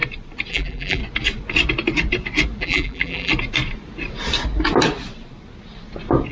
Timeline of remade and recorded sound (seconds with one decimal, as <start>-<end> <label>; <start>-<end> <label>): 0.0-0.5 recorded; 0.5-1.0 remade; 1.0-2.6 recorded; 2.6-3.3 remade; 3.3-6.3 recorded